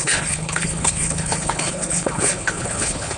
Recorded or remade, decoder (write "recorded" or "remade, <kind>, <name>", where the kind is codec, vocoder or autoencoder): remade, codec, HILCodec